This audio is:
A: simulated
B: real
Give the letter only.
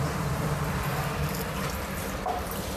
A